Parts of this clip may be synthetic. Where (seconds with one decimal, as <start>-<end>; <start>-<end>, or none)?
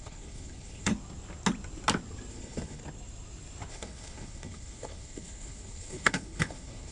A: 0.0-0.9; 2.3-2.8; 3.7-6.9